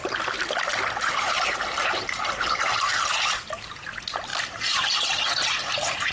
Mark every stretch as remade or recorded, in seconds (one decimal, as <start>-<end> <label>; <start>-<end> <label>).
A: 0.0-6.1 recorded